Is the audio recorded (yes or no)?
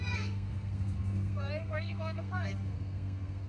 no